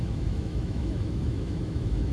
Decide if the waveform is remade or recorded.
remade